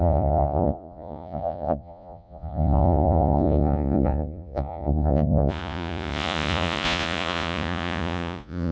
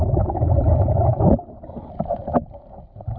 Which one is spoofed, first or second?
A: first